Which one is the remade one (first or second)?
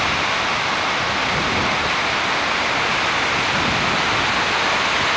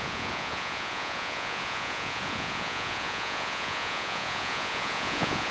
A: second